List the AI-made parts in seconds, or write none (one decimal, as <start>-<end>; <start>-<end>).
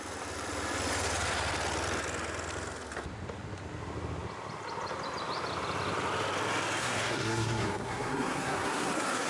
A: 6.8-9.3